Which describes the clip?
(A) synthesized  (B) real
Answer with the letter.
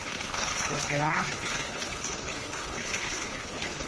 A